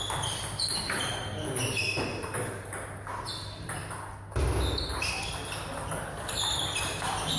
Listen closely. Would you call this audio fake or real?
real